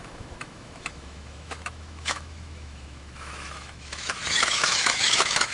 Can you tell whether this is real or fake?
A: fake